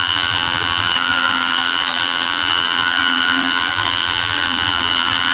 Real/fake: fake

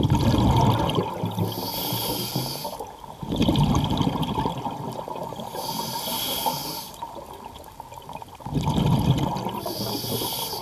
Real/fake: real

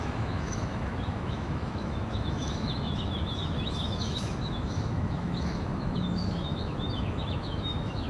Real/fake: fake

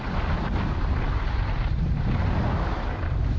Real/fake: real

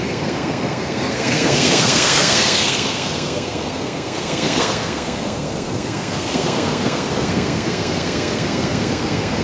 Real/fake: fake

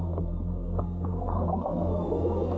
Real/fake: fake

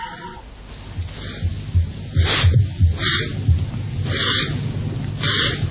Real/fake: real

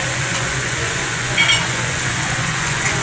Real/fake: fake